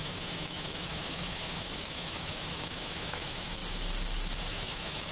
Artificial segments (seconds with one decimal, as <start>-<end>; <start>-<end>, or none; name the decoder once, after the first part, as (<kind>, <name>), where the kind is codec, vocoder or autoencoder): 0.0-3.6 (autoencoder, DAC-VAE); 4.4-5.1